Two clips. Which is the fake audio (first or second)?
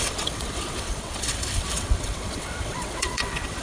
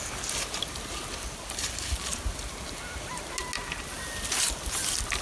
first